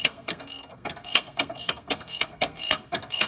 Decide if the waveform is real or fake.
fake